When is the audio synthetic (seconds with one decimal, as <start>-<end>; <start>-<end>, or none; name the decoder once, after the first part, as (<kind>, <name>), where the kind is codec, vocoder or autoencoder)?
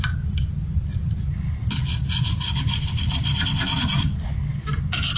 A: 2.0-2.6 (vocoder, Vocos)